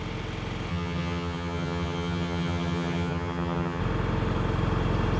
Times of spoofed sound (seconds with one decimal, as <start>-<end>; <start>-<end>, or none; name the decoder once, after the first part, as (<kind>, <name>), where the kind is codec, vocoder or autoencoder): 0.7-3.8 (vocoder, HiFi-GAN)